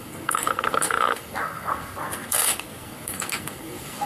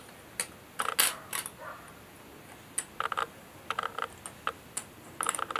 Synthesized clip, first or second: first